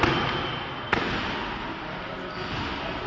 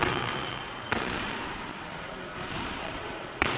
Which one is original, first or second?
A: first